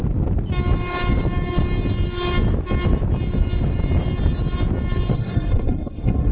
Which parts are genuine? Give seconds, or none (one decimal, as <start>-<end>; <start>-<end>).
0.0-5.1